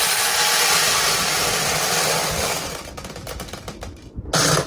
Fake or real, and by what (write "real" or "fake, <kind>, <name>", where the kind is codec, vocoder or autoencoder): real